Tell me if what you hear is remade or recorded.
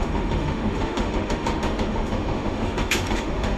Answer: remade